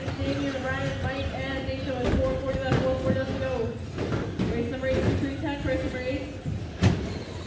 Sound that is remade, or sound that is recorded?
recorded